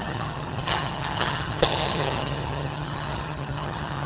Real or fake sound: fake